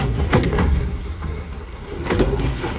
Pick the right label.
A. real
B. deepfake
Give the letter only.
B